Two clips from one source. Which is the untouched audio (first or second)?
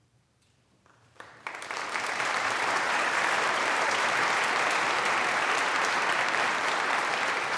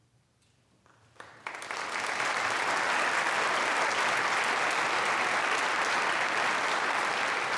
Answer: second